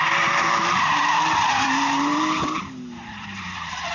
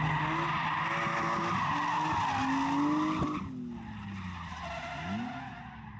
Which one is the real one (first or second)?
second